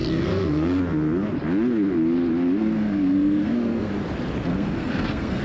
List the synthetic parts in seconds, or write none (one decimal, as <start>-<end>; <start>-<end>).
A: 0.0-0.8; 2.6-3.9; 4.5-5.4

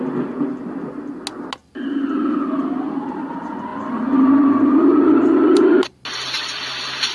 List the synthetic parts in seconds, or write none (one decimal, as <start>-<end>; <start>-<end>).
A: none

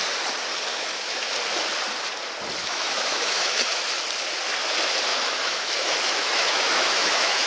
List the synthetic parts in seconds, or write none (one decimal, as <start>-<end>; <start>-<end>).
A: 0.7-1.3; 2.6-3.8; 5.1-7.5

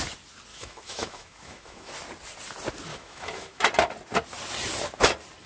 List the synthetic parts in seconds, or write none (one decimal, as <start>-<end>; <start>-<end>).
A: 0.5-1.9; 2.9-3.6

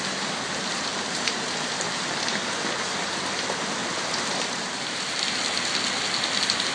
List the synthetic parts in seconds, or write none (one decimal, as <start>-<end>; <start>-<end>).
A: 0.9-2.0; 3.8-5.1